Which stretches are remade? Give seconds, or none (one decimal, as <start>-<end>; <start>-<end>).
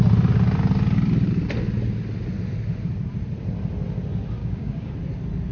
4.4-4.9